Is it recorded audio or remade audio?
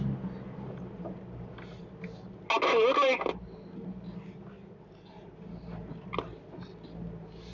recorded